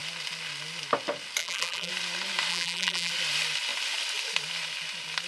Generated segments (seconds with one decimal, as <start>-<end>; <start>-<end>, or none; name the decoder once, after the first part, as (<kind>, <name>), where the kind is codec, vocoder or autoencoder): 1.4-1.9 (vocoder, BigVGAN v2); 2.5-3.1